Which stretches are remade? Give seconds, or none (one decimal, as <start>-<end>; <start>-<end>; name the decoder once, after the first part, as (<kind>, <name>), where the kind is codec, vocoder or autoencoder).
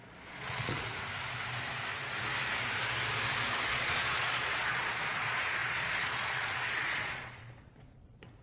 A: 0.0-0.9 (vocoder, Vocos); 3.7-8.4